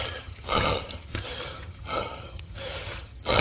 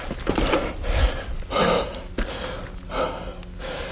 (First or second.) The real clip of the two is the second